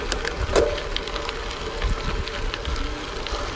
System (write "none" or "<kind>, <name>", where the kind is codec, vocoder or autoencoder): none